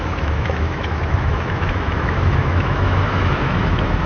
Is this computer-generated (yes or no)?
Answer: yes